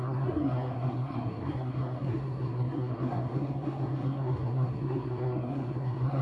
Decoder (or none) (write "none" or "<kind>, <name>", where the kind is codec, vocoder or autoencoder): codec, SNAC